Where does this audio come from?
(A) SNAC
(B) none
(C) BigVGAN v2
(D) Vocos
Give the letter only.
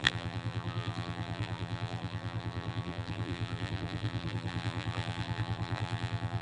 C